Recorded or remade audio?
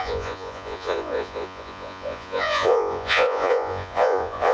remade